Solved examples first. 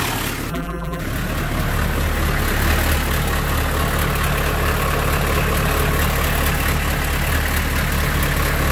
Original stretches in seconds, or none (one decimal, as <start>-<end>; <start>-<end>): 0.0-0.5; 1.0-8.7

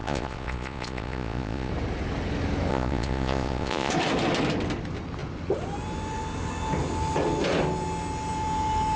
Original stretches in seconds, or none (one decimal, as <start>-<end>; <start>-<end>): 1.7-2.7; 3.9-9.0

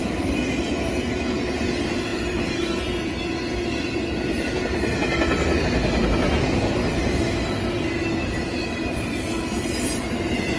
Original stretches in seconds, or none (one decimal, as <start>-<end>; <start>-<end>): 0.0-10.6

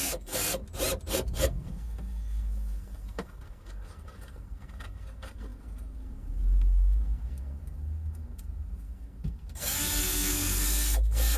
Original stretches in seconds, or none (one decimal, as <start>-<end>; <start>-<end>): 0.6-1.1